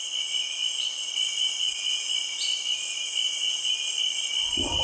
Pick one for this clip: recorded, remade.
recorded